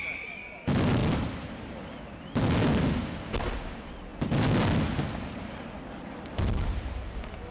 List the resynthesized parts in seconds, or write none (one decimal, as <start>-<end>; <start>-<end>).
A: none